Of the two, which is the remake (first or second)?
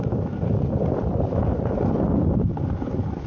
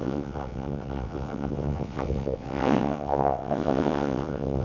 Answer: second